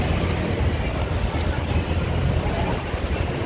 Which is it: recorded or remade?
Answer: recorded